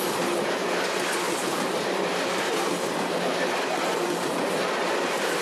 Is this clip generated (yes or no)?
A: no